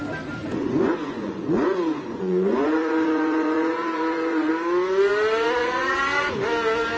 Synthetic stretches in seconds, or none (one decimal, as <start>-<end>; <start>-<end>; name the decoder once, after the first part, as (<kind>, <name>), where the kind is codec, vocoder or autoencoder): 0.4-4.5 (vocoder, Vocos); 5.6-6.3